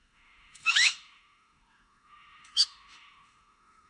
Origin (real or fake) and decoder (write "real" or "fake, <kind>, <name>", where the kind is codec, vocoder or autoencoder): fake, autoencoder, DAC-VAE